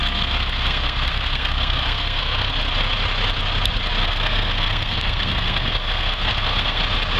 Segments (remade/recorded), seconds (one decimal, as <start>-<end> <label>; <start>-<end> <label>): 0.0-2.5 remade; 2.5-4.0 recorded; 4.0-6.8 remade; 6.8-7.2 recorded